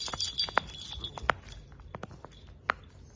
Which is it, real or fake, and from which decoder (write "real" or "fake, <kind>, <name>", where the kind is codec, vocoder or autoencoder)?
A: real